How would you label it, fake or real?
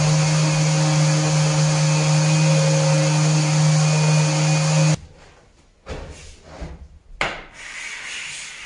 real